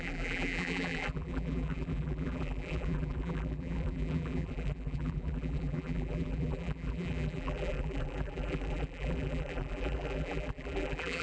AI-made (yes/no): yes